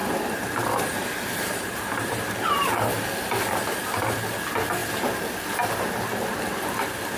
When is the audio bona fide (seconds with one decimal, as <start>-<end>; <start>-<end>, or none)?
3.0-7.2